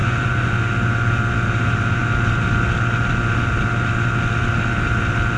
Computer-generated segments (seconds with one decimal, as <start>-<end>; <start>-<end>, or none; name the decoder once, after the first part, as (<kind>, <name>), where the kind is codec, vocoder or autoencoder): 0.0-0.5 (vocoder, Vocos)